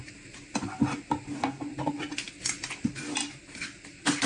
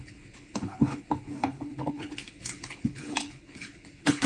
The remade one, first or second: second